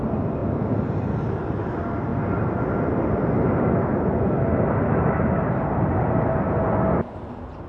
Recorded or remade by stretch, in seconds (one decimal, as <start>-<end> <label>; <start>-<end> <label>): 0.0-7.7 recorded